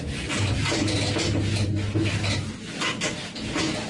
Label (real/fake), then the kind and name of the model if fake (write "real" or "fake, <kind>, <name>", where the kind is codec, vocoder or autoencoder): real